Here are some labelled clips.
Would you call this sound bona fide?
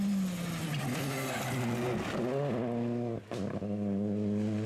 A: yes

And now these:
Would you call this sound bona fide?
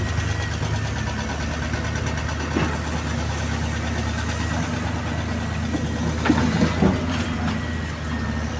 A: yes